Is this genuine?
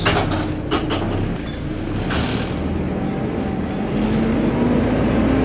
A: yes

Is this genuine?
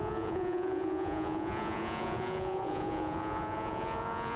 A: no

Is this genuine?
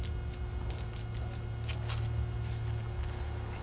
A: yes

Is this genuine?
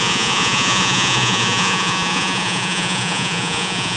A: no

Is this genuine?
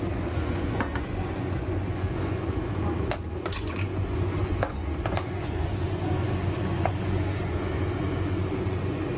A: no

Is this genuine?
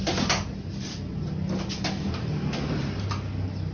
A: yes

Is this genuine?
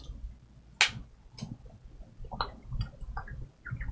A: yes